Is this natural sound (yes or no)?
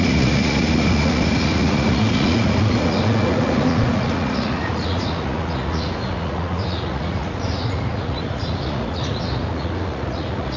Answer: no